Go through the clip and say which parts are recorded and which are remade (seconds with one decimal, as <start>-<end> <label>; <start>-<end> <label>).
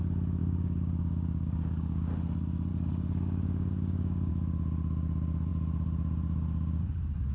0.0-0.4 recorded; 0.4-2.1 remade; 2.1-2.7 recorded; 2.7-4.3 remade; 4.3-7.3 recorded